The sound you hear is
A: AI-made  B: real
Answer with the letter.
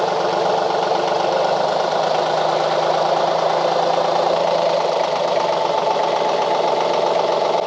B